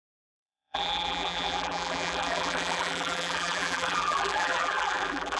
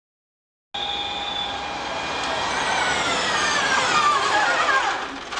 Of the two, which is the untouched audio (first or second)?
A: second